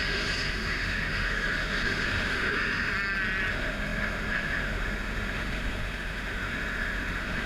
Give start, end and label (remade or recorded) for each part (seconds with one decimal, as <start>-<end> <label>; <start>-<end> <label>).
0.0-2.9 remade; 2.9-3.5 recorded; 3.5-7.5 remade